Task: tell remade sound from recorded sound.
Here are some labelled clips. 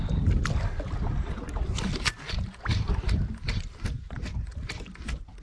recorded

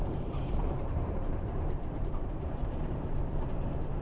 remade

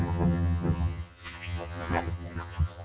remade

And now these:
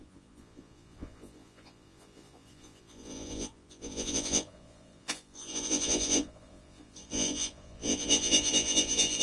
remade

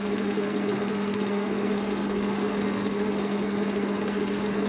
remade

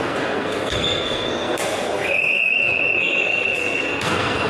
remade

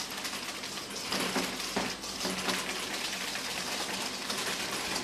recorded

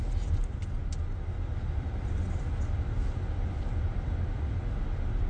recorded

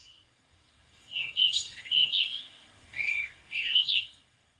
remade